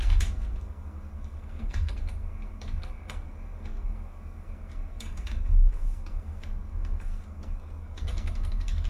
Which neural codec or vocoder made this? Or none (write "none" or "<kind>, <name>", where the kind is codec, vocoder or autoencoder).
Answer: codec, SNAC